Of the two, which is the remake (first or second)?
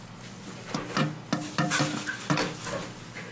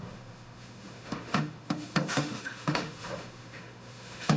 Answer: second